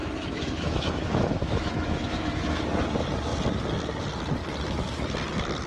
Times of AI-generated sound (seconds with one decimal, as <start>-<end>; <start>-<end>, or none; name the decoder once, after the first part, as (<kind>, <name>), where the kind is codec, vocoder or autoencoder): 0.0-2.6 (autoencoder, DAC-VAE)